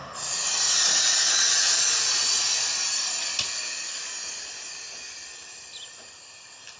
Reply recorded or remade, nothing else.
recorded